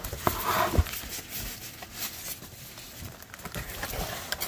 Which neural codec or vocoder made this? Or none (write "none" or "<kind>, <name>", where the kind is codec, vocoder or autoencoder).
none